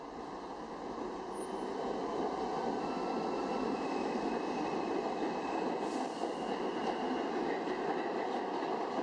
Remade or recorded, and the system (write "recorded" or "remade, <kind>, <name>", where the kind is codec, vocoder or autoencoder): recorded